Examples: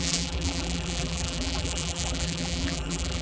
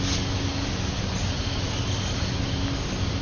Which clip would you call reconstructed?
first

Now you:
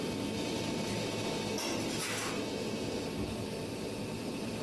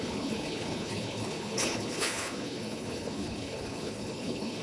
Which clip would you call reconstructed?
second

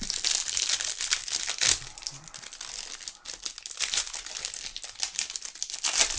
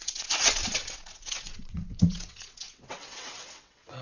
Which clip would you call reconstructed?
second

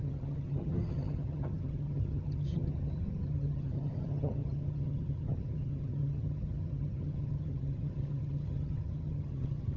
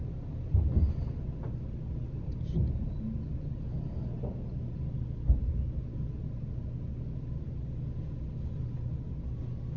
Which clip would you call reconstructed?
first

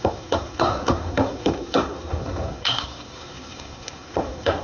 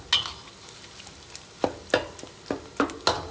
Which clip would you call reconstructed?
first